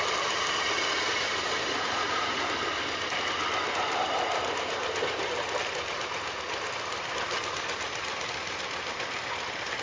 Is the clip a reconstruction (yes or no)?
no